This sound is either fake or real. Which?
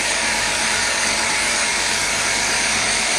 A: fake